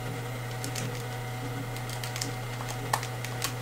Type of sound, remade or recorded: recorded